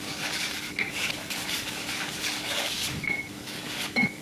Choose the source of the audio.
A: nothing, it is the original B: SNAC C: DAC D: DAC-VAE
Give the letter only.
C